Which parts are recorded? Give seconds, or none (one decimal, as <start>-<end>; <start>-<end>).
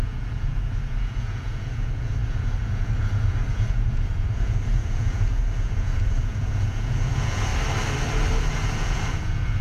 7.5-8.5